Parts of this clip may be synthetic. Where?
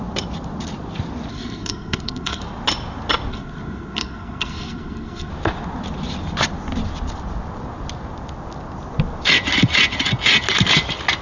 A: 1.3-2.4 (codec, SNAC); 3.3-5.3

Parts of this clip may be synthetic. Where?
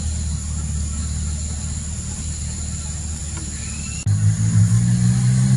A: none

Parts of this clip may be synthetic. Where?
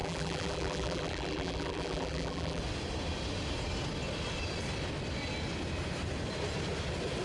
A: 0.0-2.6 (vocoder, BigVGAN v2)